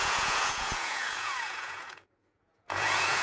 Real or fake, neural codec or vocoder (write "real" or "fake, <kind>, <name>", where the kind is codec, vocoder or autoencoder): fake, vocoder, Vocos